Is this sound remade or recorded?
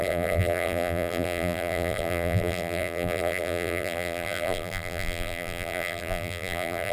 remade